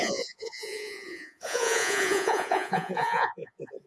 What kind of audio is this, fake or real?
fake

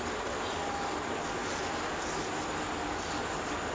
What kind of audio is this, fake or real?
real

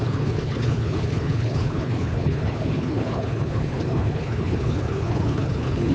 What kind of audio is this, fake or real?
fake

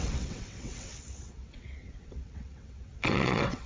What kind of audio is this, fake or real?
fake